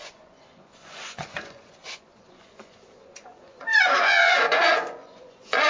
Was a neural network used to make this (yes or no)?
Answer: yes